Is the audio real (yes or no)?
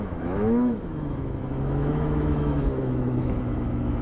no